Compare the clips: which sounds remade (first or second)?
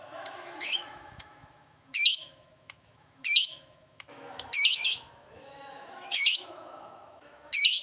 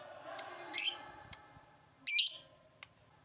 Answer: first